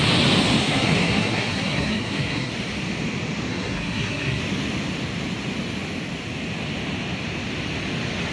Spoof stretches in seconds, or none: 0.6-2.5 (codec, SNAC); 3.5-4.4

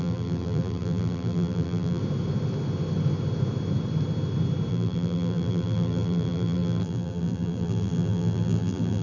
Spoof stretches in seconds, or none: 0.0-2.0 (vocoder, BigVGAN v2); 4.7-9.0

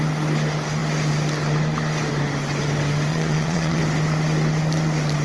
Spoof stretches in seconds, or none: 3.1-3.8 (vocoder, Vocos)

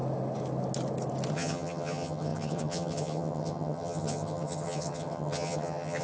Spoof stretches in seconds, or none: 1.3-6.0 (vocoder, HiFi-GAN)

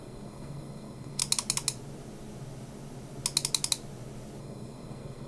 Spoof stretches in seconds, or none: 0.0-1.2 (codec, SNAC); 4.4-5.3